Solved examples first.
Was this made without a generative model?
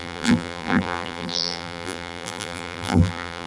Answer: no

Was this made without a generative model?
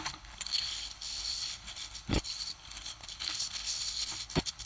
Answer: no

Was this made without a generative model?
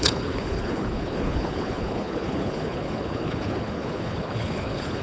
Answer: no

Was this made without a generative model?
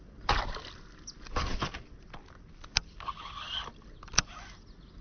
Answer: yes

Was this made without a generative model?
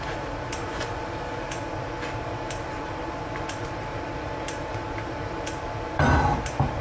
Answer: no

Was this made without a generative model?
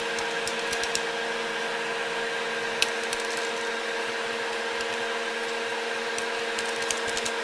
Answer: yes